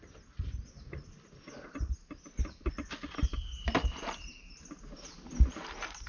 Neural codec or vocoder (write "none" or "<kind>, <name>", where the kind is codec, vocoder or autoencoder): none